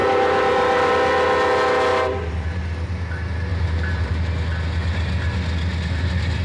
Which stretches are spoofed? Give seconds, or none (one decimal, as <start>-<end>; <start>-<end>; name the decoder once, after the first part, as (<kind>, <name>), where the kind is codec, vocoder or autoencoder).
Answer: 0.0-0.9 (vocoder, BigVGAN v2); 1.9-2.6; 3.5-4.1